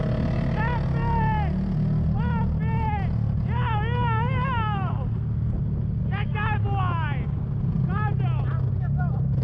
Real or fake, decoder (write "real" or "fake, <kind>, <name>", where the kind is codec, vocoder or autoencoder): real